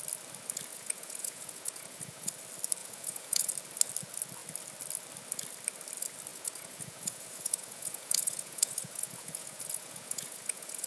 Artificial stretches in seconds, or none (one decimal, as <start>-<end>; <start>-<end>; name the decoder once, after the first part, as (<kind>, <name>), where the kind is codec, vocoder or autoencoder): 0.7-2.3 (vocoder, Vocos); 2.8-3.5; 6.3-10.9